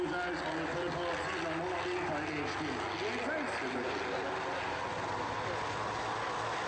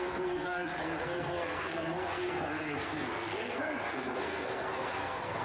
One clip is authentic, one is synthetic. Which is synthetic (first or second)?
second